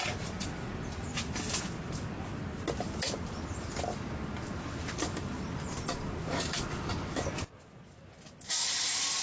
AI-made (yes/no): no